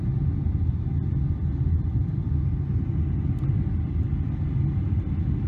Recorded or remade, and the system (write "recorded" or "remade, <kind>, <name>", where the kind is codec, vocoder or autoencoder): recorded